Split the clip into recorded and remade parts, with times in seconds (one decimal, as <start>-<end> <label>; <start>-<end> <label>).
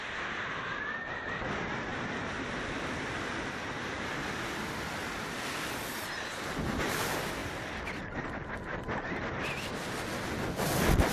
0.0-11.1 recorded